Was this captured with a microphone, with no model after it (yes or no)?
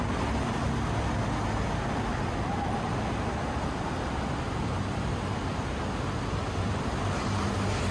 yes